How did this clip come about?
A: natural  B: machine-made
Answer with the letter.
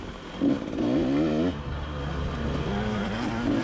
A